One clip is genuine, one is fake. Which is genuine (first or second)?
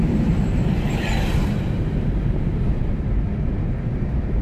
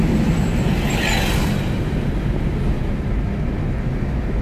second